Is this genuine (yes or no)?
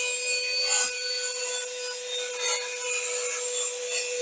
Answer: yes